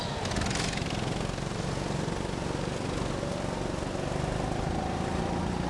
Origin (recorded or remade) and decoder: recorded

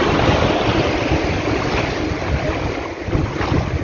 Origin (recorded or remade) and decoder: recorded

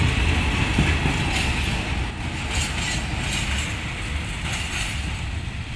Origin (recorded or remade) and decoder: recorded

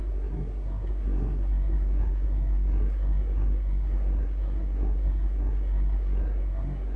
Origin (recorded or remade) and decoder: remade, codec, SNAC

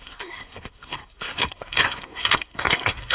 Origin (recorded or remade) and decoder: remade, codec, SNAC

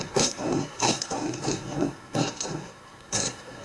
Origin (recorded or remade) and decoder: remade, codec, SNAC